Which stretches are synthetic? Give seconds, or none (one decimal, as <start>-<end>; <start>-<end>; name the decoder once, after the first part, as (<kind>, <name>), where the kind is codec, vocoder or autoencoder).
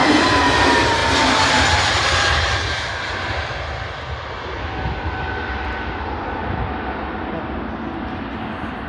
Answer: 0.0-0.5 (vocoder, BigVGAN v2)